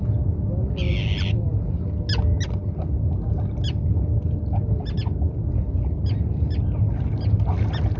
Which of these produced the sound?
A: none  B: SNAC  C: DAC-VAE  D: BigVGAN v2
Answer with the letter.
A